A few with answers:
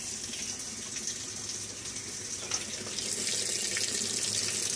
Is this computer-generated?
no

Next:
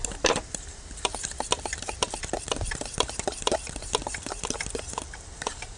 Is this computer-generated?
yes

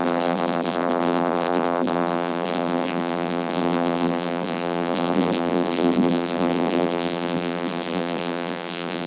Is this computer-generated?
yes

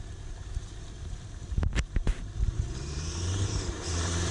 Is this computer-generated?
yes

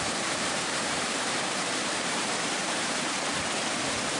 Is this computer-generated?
yes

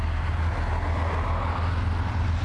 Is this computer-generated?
no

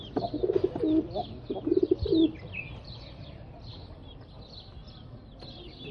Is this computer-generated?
yes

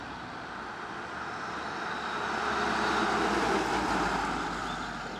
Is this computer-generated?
no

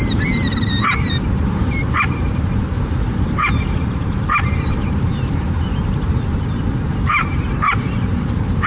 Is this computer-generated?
yes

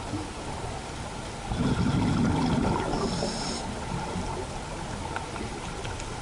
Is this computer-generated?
no